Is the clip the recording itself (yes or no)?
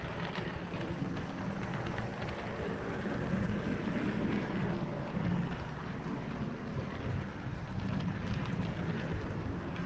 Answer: yes